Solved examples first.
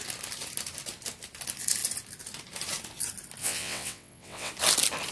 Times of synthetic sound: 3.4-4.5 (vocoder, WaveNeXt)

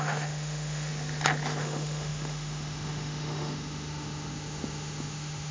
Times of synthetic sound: 0.0-0.9 (autoencoder, DAC-VAE); 1.6-5.5

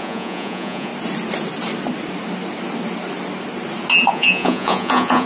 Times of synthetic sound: 0.0-0.9 (vocoder, Vocos); 4.1-5.3

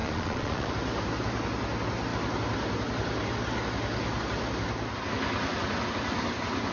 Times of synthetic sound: 0.0-0.7 (vocoder, Vocos)

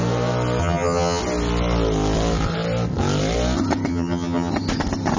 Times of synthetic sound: 0.6-1.2 (vocoder, HiFi-GAN); 3.9-4.5

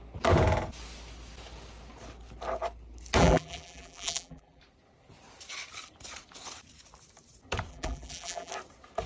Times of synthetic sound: 3.2-4.6 (vocoder, BigVGAN v2); 7.7-8.5